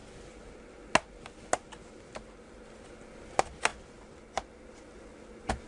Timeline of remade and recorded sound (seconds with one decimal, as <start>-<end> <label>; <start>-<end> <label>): 0.0-5.7 recorded